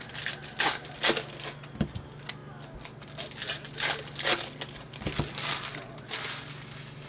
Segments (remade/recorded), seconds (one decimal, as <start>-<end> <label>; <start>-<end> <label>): 0.0-7.1 recorded